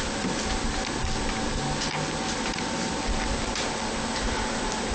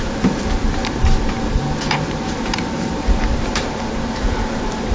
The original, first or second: first